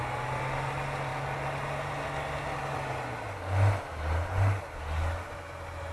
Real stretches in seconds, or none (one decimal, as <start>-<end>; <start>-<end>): 0.0-5.9